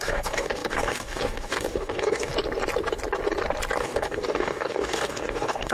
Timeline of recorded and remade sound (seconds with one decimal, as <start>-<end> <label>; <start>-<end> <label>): 0.0-2.3 remade; 2.3-3.8 recorded; 3.8-5.7 remade